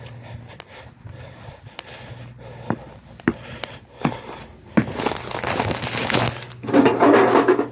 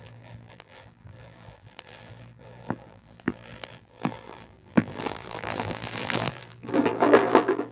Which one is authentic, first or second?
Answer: first